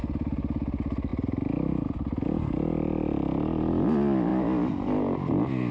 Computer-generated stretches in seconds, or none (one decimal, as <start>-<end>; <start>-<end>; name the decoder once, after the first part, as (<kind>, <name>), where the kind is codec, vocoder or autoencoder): none

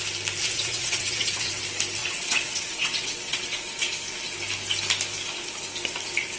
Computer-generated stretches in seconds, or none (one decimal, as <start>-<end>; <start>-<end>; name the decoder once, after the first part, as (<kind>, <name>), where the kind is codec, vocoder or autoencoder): 0.4-1.6 (vocoder, WaveNeXt); 2.0-3.6

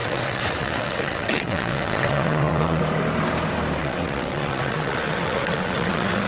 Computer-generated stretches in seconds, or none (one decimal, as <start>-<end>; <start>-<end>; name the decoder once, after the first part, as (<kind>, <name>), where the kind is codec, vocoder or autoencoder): 0.0-2.8 (vocoder, WaveNeXt); 3.8-6.3

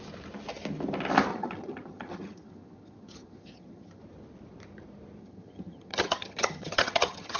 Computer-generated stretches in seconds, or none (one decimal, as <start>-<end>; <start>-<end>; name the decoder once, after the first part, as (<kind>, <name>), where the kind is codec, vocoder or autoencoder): 1.3-4.0 (vocoder, HiFi-GAN); 5.2-7.4